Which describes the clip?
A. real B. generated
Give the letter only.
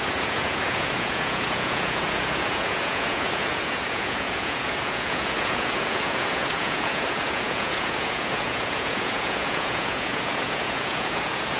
B